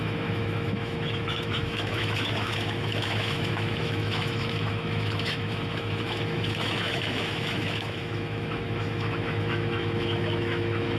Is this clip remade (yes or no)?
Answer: yes